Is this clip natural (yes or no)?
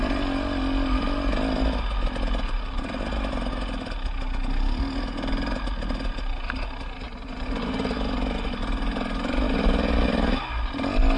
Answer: yes